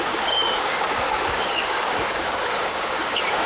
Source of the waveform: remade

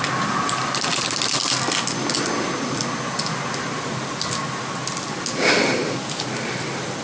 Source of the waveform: recorded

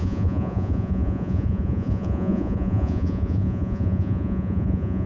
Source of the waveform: remade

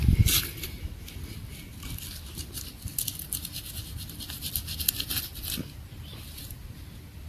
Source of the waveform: recorded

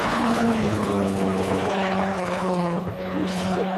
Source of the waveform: remade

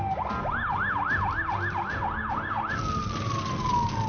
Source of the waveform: recorded